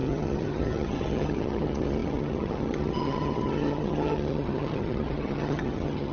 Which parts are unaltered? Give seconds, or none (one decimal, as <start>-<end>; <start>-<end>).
none